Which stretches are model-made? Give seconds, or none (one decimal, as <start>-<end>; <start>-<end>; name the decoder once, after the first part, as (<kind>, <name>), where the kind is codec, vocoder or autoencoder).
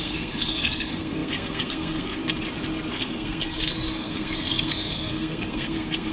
0.0-2.2 (codec, SNAC); 2.9-6.1